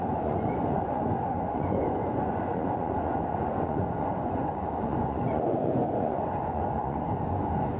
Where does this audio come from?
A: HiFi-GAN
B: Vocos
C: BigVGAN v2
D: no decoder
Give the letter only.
B